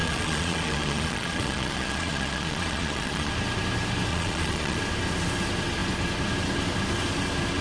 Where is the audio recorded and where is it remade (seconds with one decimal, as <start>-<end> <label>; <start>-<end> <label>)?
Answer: 0.0-3.3 remade; 3.3-4.1 recorded; 4.1-4.8 remade; 4.8-7.6 recorded